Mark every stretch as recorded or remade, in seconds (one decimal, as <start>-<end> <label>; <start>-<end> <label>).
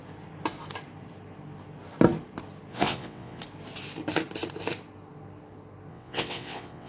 0.0-2.7 recorded; 2.7-3.4 remade; 3.4-5.9 recorded; 5.9-6.9 remade